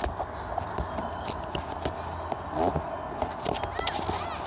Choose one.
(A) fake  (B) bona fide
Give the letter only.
B